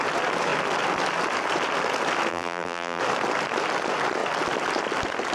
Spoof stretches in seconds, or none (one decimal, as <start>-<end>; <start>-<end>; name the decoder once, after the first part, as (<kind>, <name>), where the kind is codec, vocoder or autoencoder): 2.3-3.0 (vocoder, BigVGAN v2)